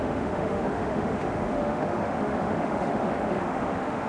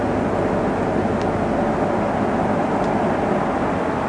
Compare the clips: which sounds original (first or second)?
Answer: second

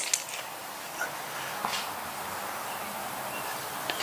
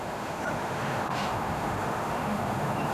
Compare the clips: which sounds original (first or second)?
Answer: first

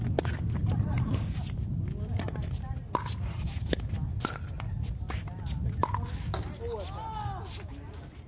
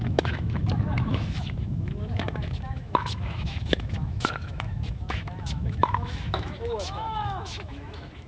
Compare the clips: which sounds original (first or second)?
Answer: first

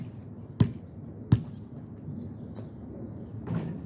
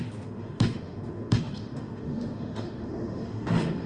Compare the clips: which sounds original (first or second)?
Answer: first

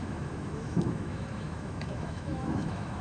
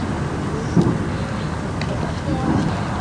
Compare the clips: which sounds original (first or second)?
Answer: second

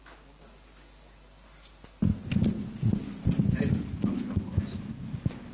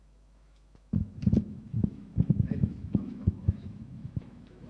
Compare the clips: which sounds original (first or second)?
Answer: first